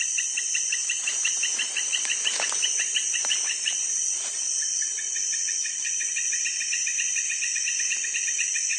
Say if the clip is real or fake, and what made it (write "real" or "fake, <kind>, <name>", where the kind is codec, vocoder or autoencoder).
real